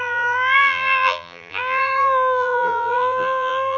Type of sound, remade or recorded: remade